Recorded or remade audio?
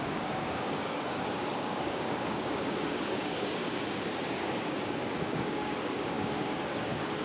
remade